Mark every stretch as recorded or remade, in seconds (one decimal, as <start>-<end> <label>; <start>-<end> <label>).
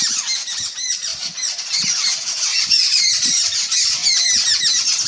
0.0-1.1 recorded; 1.1-1.7 remade; 1.7-2.5 recorded; 2.5-3.0 remade; 3.0-5.1 recorded